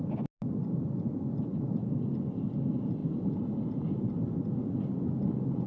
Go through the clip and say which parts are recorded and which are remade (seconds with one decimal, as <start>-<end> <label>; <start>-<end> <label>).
0.0-5.7 recorded